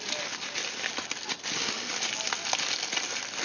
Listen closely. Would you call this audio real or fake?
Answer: real